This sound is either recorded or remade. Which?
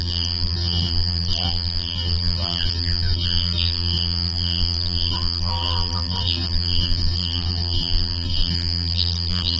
remade